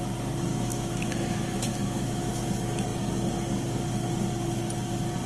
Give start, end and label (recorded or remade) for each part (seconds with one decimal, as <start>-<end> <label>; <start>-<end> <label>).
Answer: 0.0-0.5 recorded; 0.5-2.3 remade; 2.3-5.3 recorded